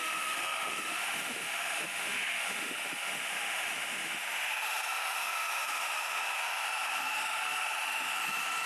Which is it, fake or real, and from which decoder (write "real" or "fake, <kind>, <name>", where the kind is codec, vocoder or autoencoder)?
fake, autoencoder, DAC-VAE